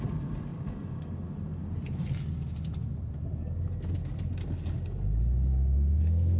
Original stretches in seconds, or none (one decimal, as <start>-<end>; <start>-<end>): 0.0-5.5